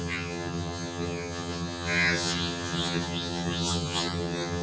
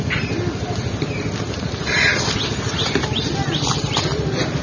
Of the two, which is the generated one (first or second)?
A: first